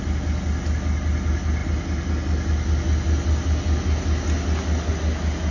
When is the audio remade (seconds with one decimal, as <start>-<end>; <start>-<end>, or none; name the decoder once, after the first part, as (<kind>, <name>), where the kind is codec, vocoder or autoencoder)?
none